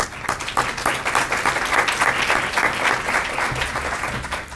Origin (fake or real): real